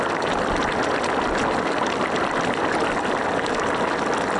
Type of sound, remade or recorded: recorded